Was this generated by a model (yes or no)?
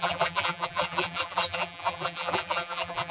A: yes